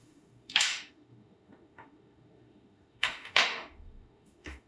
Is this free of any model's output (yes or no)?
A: no